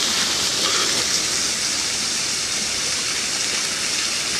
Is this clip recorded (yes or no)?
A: yes